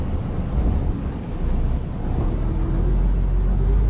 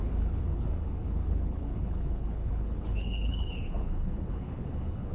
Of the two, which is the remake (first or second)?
second